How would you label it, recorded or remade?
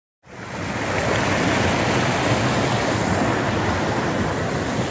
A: recorded